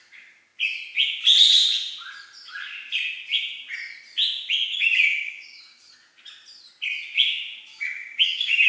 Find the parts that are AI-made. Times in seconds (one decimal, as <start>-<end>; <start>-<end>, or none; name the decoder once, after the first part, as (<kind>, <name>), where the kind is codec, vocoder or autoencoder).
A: 5.1-5.8 (codec, DAC); 7.7-8.7